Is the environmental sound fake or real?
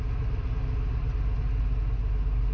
real